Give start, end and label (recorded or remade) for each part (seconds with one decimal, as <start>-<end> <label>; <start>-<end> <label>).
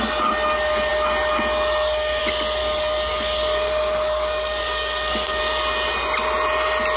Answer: 0.0-2.6 recorded; 2.6-5.4 remade; 5.4-7.0 recorded